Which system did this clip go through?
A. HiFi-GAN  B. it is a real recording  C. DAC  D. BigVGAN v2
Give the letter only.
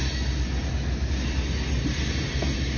B